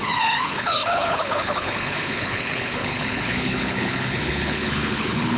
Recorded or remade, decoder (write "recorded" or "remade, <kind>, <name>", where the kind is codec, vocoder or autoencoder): remade, codec, HILCodec